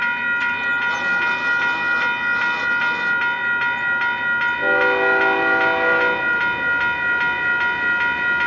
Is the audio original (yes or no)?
yes